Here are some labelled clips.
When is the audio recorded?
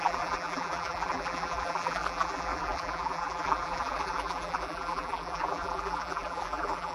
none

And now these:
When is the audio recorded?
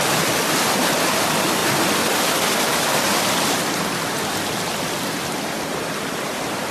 none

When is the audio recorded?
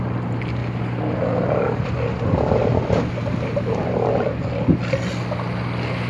0.0-6.1